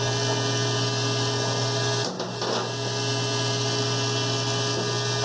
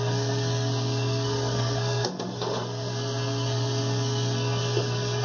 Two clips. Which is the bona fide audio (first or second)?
first